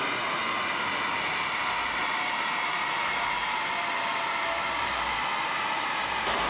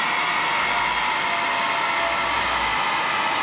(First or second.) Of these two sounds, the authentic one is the second